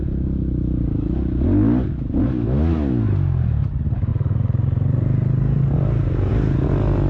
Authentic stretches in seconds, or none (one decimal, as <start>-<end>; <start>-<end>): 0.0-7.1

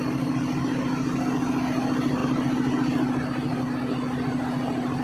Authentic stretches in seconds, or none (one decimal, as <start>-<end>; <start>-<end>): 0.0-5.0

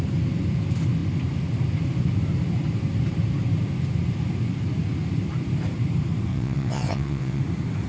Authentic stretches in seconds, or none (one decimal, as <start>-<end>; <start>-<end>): 0.0-6.3; 7.4-7.9